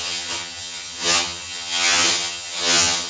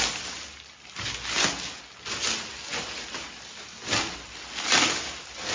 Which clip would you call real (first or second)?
second